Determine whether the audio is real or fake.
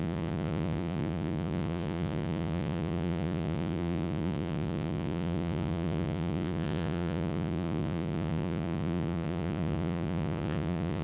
fake